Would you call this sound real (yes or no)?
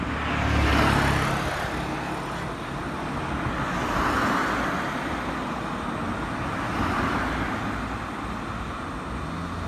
yes